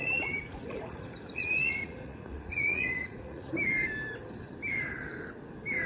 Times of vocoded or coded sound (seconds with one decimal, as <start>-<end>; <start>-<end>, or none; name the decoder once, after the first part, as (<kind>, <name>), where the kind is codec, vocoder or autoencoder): 0.0-3.5 (vocoder, Vocos)